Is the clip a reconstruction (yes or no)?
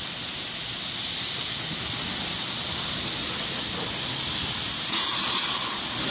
no